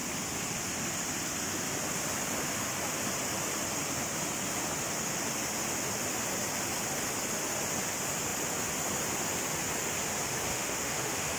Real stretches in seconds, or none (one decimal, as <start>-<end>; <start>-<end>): 0.0-10.5